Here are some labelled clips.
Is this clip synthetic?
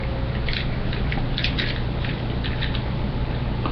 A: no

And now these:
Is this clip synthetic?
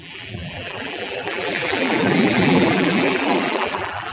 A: yes